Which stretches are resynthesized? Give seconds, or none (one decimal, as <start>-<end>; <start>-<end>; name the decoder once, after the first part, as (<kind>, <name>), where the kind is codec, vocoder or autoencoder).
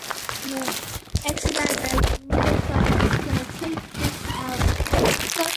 0.0-0.7 (vocoder, BigVGAN v2); 4.1-5.6